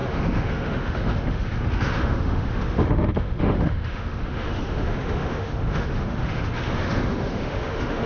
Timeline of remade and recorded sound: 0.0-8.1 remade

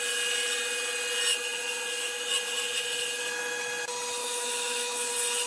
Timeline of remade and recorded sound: 0.0-4.2 recorded; 4.2-5.1 remade; 5.1-5.5 recorded